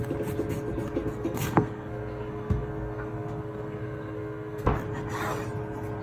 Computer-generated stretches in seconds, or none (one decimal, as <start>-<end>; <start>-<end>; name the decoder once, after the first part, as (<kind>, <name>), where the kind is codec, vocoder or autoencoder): 1.1-4.7 (codec, SNAC)